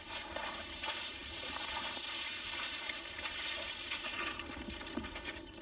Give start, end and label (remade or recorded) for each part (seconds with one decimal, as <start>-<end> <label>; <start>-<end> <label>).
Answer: 0.0-5.6 remade